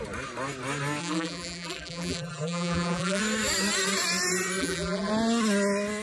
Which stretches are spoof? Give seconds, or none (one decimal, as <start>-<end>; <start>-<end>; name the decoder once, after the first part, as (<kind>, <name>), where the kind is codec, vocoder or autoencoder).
1.0-3.2 (vocoder, BigVGAN v2); 4.6-5.1